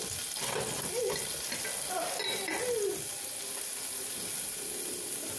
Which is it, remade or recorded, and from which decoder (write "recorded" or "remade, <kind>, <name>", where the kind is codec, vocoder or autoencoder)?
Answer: recorded